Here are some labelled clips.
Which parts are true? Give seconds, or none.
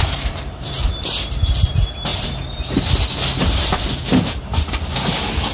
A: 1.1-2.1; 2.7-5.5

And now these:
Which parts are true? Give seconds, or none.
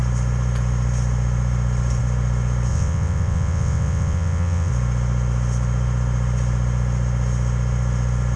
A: 0.0-2.7; 4.7-8.4